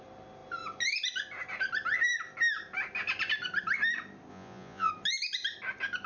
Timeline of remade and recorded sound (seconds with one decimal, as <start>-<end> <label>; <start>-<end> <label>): 0.0-4.3 recorded; 4.3-4.9 remade; 4.9-6.1 recorded